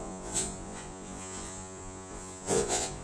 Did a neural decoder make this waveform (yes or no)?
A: yes